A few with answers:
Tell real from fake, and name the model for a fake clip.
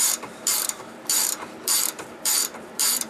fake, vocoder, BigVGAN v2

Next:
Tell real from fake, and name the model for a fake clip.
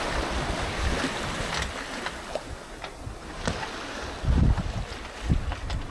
real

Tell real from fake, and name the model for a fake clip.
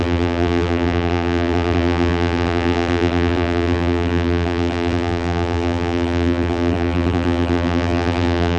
fake, vocoder, BigVGAN v2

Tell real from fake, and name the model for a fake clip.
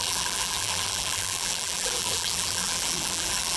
fake, vocoder, BigVGAN v2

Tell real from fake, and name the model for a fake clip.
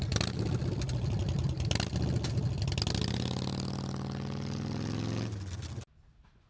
real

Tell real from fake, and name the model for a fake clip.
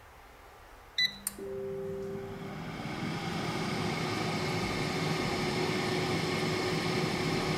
real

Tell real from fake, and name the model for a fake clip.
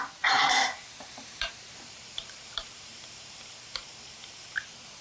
fake, vocoder, BigVGAN v2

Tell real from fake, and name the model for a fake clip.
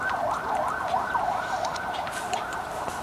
fake, vocoder, BigVGAN v2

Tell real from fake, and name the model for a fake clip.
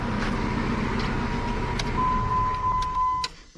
real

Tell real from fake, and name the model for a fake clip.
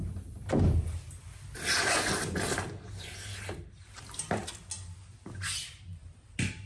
real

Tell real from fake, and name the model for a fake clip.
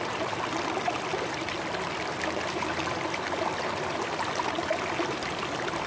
real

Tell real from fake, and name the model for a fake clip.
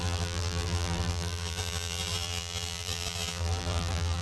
fake, vocoder, BigVGAN v2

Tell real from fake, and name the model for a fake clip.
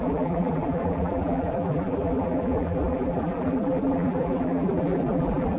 fake, vocoder, BigVGAN v2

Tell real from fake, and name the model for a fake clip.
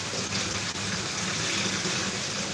fake, vocoder, BigVGAN v2